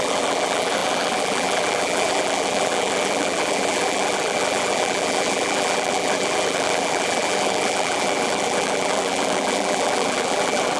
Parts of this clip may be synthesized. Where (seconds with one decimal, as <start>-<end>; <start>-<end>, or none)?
0.0-10.8